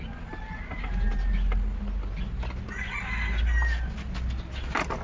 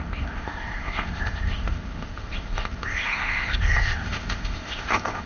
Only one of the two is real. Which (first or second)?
first